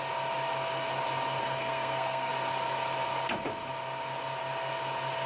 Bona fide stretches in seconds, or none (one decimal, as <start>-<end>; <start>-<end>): 0.0-1.4; 2.3-5.3